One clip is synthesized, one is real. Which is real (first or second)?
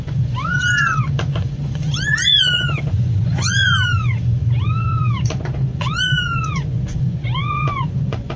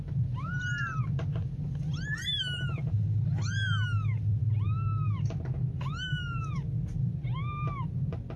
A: second